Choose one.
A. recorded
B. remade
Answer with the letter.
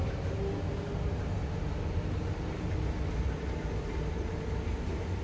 A